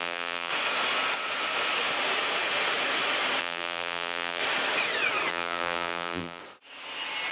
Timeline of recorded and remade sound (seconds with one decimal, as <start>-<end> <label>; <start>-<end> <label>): 0.0-0.5 remade; 0.5-3.4 recorded; 3.4-4.4 remade; 4.4-5.3 recorded; 5.3-6.4 remade; 6.4-7.3 recorded